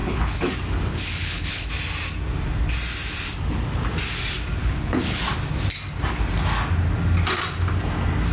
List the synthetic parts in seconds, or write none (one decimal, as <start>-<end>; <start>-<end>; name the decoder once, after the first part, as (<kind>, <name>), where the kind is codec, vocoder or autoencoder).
0.0-0.5 (codec, HILCodec); 0.9-1.7; 4.6-5.2